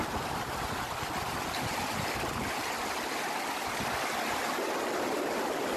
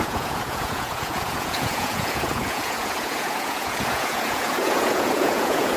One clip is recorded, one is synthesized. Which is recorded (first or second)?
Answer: first